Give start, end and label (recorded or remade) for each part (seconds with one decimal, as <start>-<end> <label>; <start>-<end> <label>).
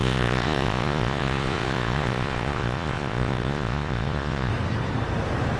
0.0-4.5 remade; 4.5-5.6 recorded